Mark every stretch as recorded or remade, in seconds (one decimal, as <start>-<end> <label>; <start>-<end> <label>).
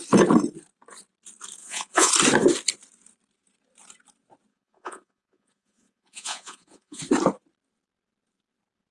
0.0-1.6 recorded; 1.6-2.1 remade; 2.1-4.5 recorded; 4.5-7.0 remade; 7.0-8.9 recorded